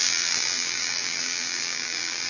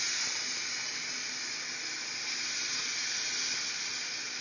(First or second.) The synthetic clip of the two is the first